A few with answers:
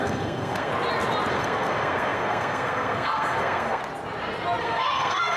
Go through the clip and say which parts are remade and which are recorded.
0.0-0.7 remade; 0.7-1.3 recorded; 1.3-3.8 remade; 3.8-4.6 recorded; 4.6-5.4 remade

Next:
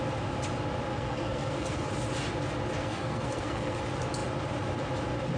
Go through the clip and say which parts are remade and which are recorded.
0.0-0.9 recorded; 0.9-1.9 remade; 1.9-2.8 recorded; 2.8-3.8 remade; 3.8-5.4 recorded

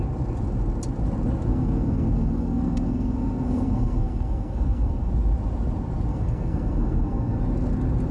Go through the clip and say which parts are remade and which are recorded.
0.0-1.5 recorded; 1.5-5.1 remade; 5.1-6.1 recorded; 6.1-7.4 remade; 7.4-8.1 recorded

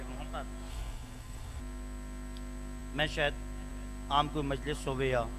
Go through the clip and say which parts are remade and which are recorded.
0.0-0.7 recorded; 0.7-1.6 remade; 1.6-5.4 recorded

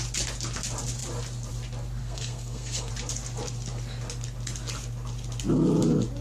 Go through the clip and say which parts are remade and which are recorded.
0.0-2.0 recorded; 2.0-2.9 remade; 2.9-6.2 recorded